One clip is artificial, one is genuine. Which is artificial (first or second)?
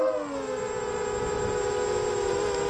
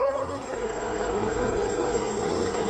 second